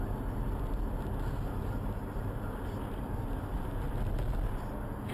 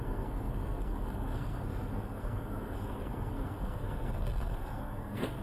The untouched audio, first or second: first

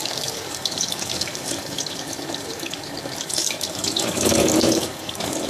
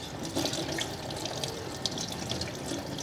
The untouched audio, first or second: second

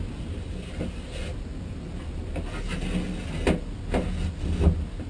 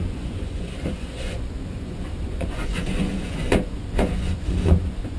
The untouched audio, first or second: first